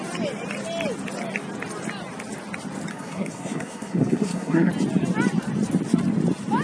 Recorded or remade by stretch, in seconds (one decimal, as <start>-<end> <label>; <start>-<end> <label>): 0.0-2.9 recorded; 2.9-4.7 remade; 4.7-6.6 recorded